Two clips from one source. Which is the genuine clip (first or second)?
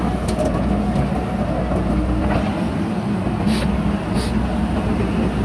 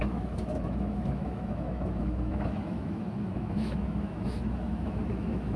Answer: first